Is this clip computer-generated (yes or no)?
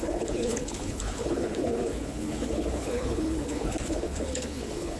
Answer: yes